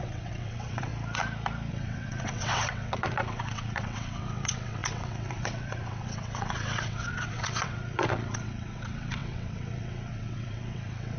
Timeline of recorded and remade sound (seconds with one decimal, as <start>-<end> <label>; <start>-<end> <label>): 0.0-0.9 remade; 0.9-1.7 recorded; 1.7-11.2 remade